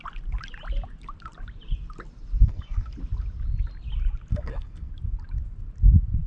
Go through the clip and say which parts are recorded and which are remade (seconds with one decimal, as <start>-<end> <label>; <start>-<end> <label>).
0.0-2.4 recorded; 2.4-2.9 remade; 2.9-4.3 recorded; 4.3-4.9 remade; 4.9-6.3 recorded